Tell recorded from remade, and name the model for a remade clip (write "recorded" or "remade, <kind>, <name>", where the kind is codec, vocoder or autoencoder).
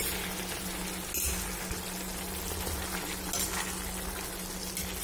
recorded